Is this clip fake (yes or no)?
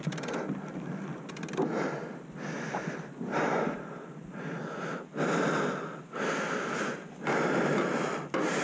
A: no